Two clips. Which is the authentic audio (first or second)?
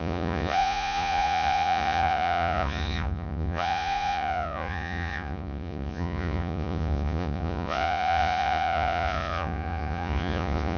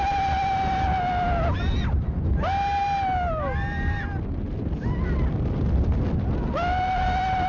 second